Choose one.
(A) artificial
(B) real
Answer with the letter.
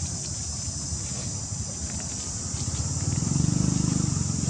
B